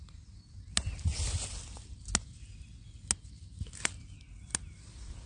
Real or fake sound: real